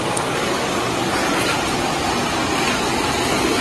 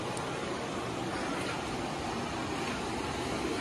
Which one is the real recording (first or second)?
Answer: first